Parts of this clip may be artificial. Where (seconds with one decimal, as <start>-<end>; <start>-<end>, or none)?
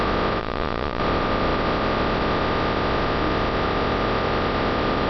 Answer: 0.4-1.0